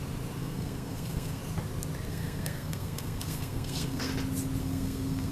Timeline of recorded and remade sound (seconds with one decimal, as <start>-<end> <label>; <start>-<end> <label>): 0.0-0.4 recorded; 0.4-1.4 remade; 1.4-2.1 recorded; 2.1-4.1 remade; 4.1-4.6 recorded; 4.6-5.3 remade